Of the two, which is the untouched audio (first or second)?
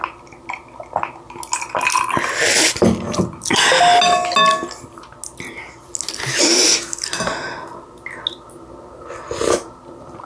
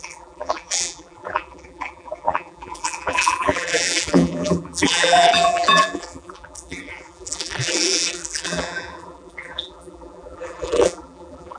first